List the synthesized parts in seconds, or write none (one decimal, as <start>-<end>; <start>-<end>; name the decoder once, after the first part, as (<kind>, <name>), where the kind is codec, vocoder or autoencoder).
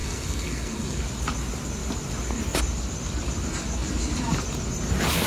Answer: 0.0-1.0 (codec, SNAC)